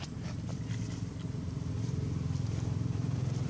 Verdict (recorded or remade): remade